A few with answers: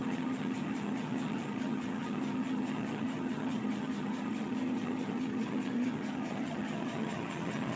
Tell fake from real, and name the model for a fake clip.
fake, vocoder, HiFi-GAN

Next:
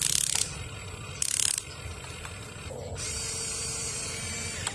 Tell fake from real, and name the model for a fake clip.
real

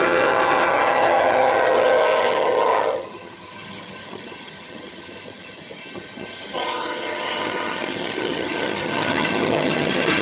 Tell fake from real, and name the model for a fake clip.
fake, vocoder, HiFi-GAN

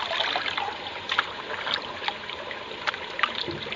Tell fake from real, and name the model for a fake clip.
real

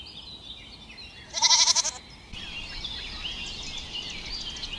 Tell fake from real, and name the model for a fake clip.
real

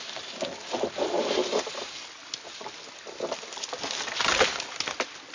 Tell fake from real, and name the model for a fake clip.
real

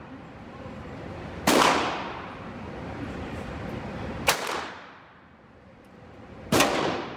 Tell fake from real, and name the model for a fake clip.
fake, vocoder, BigVGAN v2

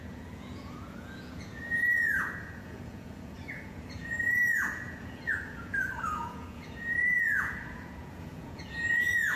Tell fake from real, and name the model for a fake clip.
fake, vocoder, Vocos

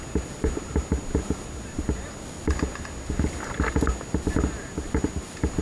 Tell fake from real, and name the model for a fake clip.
real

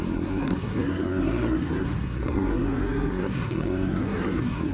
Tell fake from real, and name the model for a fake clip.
fake, codec, SNAC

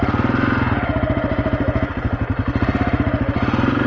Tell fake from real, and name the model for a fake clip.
real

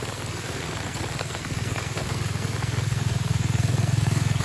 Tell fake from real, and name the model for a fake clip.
fake, codec, SNAC